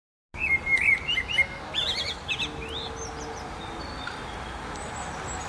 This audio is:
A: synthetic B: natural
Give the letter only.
B